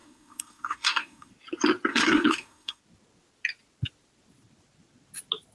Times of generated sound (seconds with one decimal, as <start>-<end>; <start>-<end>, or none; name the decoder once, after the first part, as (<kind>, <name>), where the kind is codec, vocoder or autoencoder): 0.0-1.3 (codec, SNAC); 1.9-2.8